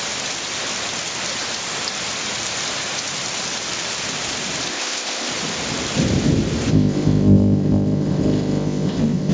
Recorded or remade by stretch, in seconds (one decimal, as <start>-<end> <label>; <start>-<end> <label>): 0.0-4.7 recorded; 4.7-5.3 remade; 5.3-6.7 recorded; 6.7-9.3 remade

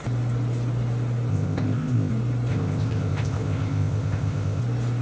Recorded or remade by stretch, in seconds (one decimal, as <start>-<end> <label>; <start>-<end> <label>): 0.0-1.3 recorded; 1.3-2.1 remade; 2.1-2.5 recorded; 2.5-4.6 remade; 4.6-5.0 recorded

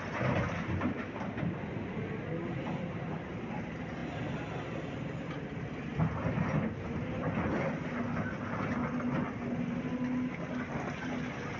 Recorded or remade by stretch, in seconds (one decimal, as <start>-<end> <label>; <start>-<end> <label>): 0.0-11.6 recorded